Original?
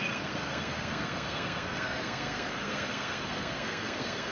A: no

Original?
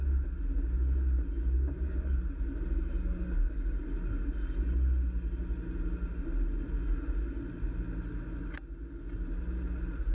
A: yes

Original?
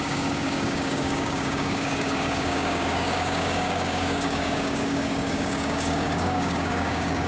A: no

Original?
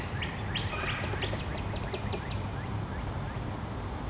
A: yes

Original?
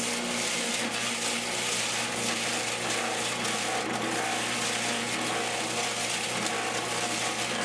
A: yes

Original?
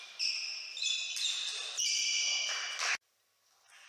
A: yes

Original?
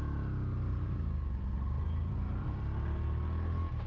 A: yes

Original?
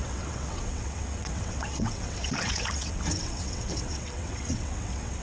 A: no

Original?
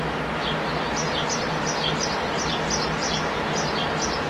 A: yes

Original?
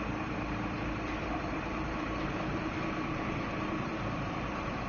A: no